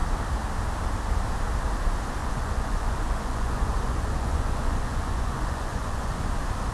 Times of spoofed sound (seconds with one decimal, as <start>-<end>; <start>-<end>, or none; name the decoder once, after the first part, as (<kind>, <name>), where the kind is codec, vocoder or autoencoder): 2.2-6.2 (vocoder, Vocos)

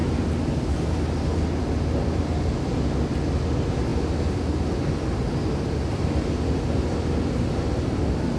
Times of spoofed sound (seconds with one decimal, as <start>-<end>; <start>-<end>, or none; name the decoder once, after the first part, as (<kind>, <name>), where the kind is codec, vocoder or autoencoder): none

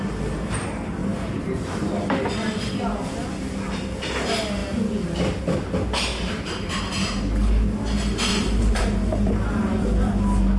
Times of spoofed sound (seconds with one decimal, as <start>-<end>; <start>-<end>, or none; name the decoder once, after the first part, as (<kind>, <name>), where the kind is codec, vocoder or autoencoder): 1.0-1.9 (vocoder, BigVGAN v2); 6.1-6.8; 8.3-8.8